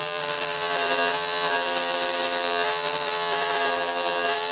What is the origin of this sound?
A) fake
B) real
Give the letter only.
A